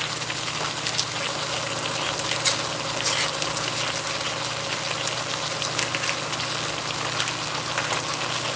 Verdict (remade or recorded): recorded